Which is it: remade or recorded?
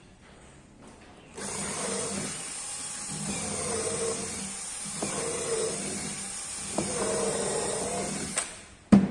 recorded